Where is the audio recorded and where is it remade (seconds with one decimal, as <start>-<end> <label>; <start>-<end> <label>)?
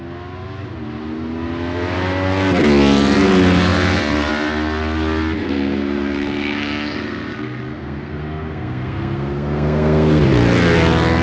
0.0-5.4 recorded; 5.4-10.2 remade; 10.2-11.2 recorded